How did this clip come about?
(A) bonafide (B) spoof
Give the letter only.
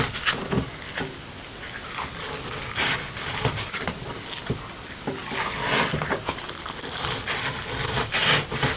A